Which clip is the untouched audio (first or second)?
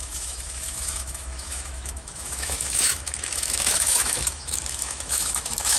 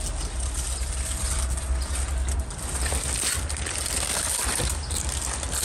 second